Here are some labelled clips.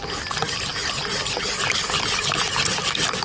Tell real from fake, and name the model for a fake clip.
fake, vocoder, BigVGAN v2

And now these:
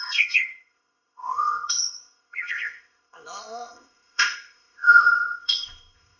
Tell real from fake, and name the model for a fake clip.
fake, codec, ZipCodec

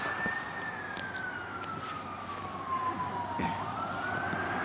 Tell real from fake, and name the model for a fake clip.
real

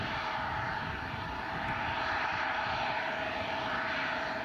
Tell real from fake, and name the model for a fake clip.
fake, vocoder, BigVGAN v2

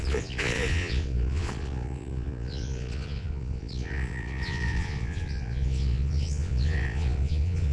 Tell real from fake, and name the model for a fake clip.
fake, vocoder, Vocos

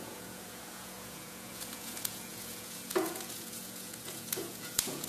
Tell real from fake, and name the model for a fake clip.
fake, vocoder, Vocos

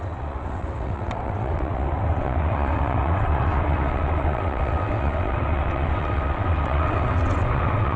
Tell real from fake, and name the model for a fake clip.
fake, vocoder, WaveNeXt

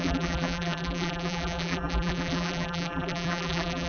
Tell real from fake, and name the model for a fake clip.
fake, vocoder, BigVGAN v2